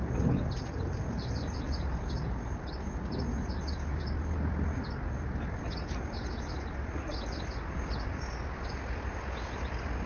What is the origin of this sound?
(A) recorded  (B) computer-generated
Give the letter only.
A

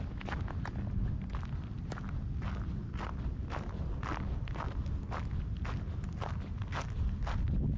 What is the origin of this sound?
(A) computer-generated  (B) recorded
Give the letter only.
B